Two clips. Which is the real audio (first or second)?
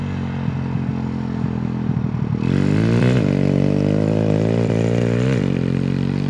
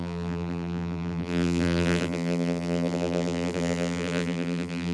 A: first